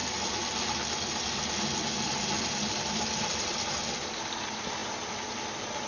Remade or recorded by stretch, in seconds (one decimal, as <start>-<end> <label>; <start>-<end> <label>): 0.0-5.9 recorded